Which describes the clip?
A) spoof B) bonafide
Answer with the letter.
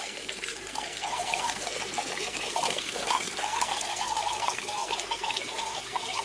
A